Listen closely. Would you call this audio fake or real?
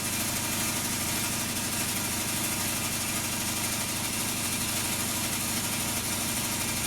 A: real